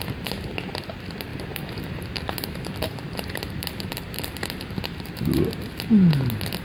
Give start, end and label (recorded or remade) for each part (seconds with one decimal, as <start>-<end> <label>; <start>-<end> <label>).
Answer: 0.0-1.3 recorded; 1.3-5.1 remade; 5.1-6.6 recorded